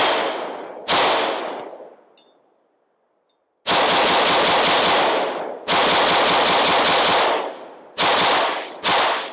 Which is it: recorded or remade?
recorded